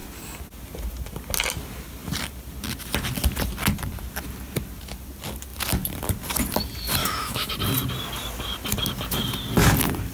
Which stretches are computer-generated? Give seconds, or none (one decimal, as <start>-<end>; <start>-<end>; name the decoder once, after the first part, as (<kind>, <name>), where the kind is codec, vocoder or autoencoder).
7.0-7.5 (autoencoder, DAC-VAE)